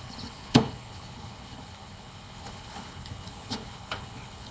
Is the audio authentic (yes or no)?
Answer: no